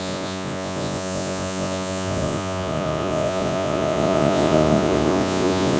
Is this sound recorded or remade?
remade